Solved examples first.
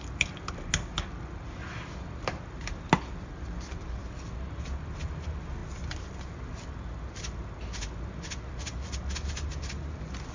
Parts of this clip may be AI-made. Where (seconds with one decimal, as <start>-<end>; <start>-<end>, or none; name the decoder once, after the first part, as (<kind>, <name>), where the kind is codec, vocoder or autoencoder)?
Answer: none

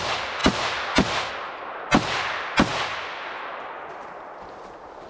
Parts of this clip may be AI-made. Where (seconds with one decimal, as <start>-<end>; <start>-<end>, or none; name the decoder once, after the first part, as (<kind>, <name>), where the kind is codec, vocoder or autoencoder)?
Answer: none

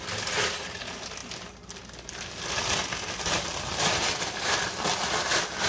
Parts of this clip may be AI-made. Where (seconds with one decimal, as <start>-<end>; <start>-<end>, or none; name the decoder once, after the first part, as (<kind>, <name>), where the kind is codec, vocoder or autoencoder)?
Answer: none